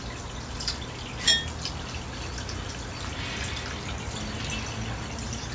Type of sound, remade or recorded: recorded